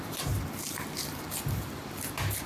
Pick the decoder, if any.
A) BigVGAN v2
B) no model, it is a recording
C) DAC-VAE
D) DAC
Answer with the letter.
A